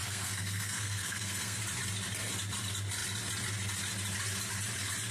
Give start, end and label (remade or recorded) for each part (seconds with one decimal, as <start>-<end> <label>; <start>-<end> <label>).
0.0-1.6 remade; 1.6-5.1 recorded